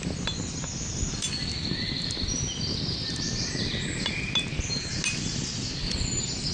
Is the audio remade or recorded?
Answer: recorded